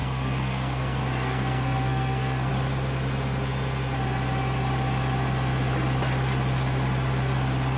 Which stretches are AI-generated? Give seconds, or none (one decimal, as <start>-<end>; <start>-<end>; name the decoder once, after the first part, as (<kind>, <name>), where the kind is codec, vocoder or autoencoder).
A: 0.0-2.5 (codec, SNAC)